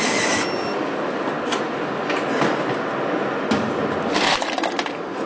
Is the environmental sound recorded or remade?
recorded